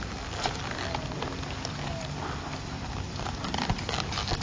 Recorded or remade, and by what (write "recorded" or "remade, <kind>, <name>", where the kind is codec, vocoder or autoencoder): recorded